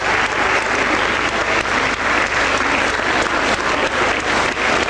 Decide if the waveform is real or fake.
real